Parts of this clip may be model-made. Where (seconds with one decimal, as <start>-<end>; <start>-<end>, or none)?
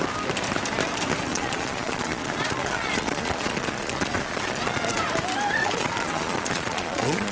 1.3-5.0; 5.6-7.3